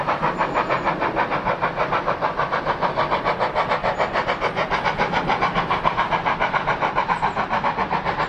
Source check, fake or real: real